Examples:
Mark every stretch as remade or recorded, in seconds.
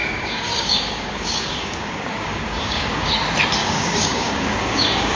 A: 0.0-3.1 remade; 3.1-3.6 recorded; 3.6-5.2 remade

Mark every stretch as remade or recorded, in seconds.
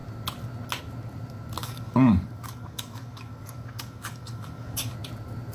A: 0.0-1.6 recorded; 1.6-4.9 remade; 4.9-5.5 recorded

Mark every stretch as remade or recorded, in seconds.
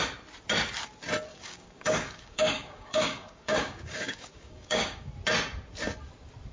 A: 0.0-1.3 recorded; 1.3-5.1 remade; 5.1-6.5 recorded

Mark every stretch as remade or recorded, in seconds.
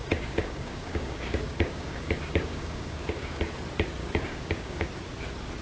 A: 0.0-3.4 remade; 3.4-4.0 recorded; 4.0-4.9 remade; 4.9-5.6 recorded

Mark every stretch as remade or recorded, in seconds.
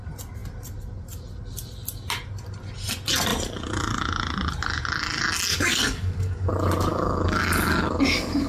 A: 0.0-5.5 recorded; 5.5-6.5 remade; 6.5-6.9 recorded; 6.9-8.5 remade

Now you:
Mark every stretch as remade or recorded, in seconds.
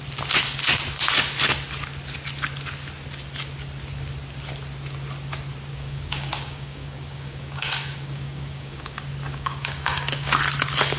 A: 0.0-5.7 recorded; 5.7-8.9 remade; 8.9-9.3 recorded; 9.3-10.4 remade; 10.4-11.0 recorded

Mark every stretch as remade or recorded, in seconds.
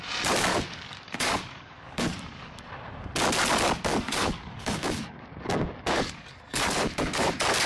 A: 0.0-0.5 recorded; 0.5-2.7 remade; 2.7-3.9 recorded; 3.9-7.3 remade; 7.3-7.7 recorded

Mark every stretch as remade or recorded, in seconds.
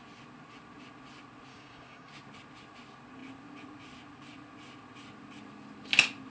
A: 0.0-1.5 recorded; 1.5-2.1 remade; 2.1-6.3 recorded